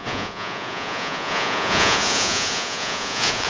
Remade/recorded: remade